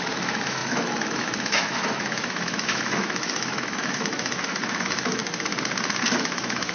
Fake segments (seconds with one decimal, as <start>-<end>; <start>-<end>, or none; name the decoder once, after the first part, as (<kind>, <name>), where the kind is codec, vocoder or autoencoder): 0.0-5.2 (autoencoder, DAC-VAE); 6.2-6.7